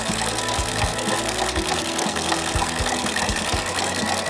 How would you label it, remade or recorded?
remade